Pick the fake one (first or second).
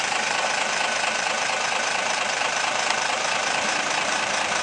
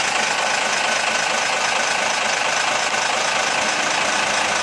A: first